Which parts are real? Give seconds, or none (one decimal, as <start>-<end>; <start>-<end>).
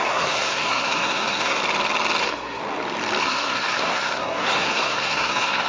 1.6-2.2; 2.6-3.2